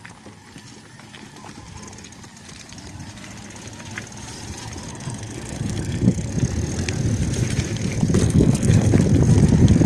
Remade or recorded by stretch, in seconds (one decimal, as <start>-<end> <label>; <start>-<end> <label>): 0.0-4.9 recorded; 4.9-6.3 remade; 6.3-8.2 recorded; 8.2-8.9 remade; 8.9-9.9 recorded